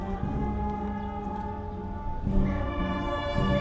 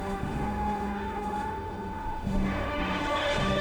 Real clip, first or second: first